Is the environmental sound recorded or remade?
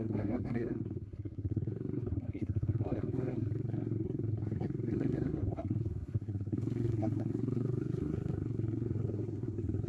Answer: remade